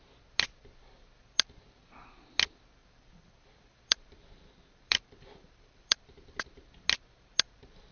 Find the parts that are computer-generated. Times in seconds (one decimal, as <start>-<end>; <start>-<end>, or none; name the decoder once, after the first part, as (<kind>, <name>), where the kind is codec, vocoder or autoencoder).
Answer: 2.8-6.0 (vocoder, BigVGAN v2)